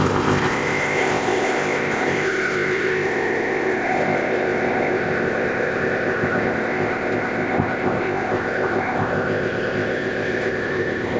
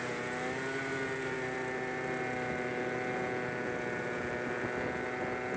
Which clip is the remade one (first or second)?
first